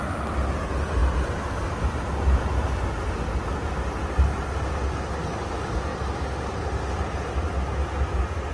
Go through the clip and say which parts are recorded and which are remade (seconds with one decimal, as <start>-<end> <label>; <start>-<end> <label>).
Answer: 0.0-8.5 recorded